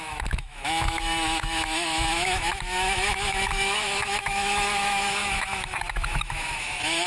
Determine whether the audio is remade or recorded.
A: remade